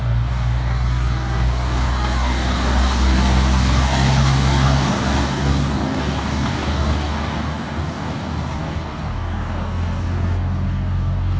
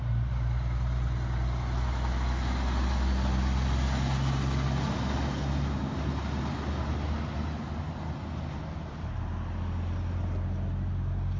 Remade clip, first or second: first